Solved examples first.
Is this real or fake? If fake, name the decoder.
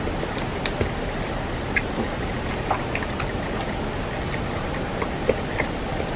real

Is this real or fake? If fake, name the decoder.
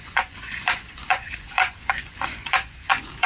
fake, vocoder, Vocos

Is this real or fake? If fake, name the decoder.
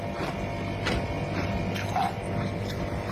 real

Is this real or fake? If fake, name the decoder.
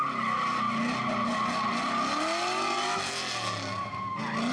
real